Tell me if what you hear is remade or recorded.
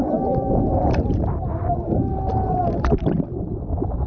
recorded